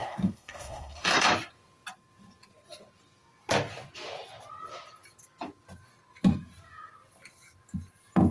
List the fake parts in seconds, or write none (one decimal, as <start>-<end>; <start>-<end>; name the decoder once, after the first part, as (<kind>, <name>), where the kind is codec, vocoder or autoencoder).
0.0-1.3 (codec, SNAC)